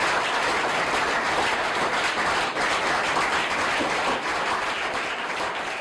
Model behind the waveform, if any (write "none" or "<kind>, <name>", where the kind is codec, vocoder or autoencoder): none